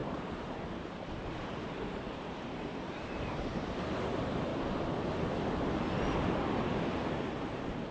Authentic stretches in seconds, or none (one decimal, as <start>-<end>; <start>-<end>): 4.5-6.9